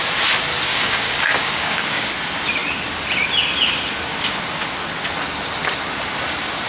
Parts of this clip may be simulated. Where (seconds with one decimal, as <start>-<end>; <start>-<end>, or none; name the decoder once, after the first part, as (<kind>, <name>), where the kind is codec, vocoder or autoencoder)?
0.7-2.1 (codec, DAC)